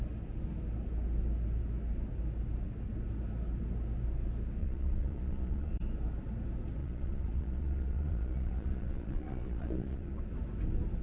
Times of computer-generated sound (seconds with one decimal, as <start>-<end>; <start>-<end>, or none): 4.6-5.7; 6.8-10.2